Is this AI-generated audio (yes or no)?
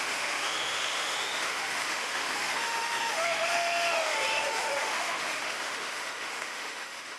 yes